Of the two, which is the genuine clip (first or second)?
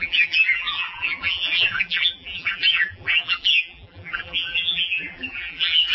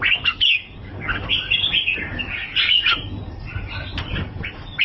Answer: second